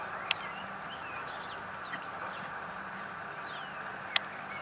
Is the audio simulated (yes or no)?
no